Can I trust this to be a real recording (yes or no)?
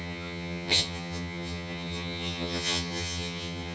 no